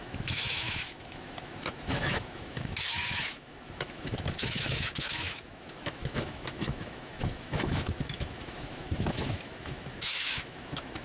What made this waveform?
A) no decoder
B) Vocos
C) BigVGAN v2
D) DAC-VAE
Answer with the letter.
D